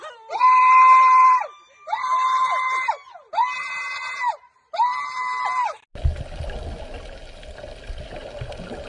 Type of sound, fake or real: real